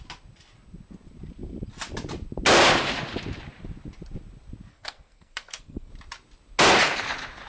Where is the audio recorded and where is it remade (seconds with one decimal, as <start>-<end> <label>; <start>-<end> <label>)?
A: 0.0-4.7 recorded; 4.7-5.9 remade; 5.9-7.5 recorded

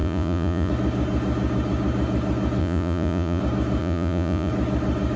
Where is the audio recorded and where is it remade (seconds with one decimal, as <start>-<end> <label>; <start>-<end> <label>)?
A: 0.0-0.7 remade; 0.7-2.6 recorded; 2.6-3.4 remade; 3.4-3.8 recorded; 3.8-4.5 remade; 4.5-5.2 recorded

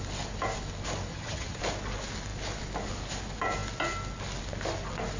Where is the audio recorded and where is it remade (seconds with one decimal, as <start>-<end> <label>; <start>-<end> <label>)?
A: 0.0-1.1 recorded; 1.1-1.6 remade; 1.6-5.2 recorded

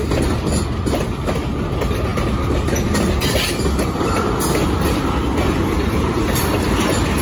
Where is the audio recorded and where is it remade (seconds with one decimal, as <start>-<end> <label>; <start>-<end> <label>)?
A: 0.0-7.2 recorded

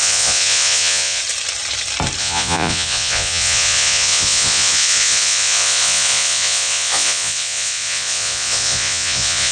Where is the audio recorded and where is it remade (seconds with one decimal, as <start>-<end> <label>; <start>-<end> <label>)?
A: 0.0-1.2 remade; 1.2-2.2 recorded; 2.2-9.5 remade

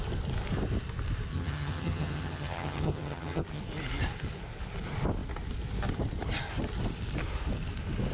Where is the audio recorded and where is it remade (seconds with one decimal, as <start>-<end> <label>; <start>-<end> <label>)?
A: 0.0-1.3 recorded; 1.3-3.6 remade; 3.6-8.1 recorded

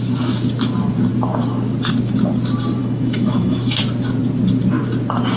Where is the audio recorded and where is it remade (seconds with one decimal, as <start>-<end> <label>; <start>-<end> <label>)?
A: 0.0-2.8 recorded; 2.8-3.8 remade; 3.8-5.4 recorded

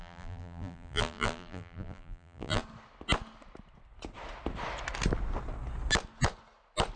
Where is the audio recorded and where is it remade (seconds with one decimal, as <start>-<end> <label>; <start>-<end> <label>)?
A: 0.0-2.6 remade; 2.6-7.0 recorded